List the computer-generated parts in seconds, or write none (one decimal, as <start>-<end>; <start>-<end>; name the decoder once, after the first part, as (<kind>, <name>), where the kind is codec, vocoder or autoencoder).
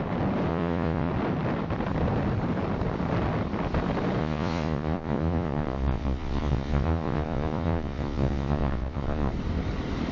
0.5-1.1 (vocoder, Vocos); 4.2-9.3